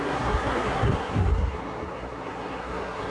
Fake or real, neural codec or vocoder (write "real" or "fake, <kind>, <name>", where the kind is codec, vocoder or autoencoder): fake, codec, SNAC